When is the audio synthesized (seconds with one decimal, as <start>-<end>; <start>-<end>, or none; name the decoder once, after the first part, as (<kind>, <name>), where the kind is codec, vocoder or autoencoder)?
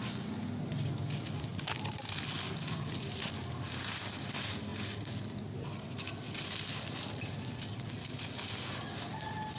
none